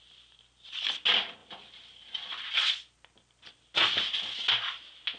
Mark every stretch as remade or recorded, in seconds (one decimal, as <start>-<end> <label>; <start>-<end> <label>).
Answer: 0.0-5.2 recorded